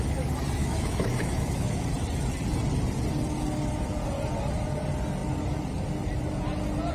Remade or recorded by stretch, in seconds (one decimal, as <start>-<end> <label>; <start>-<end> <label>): 0.0-0.6 recorded; 0.6-1.9 remade; 1.9-6.9 recorded